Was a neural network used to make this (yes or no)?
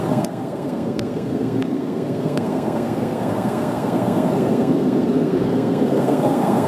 yes